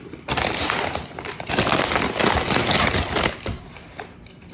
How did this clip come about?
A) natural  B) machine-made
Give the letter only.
B